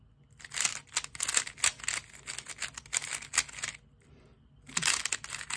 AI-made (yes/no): no